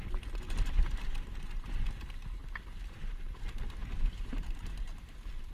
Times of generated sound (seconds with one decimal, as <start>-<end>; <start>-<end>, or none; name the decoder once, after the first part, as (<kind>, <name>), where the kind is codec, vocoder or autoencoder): none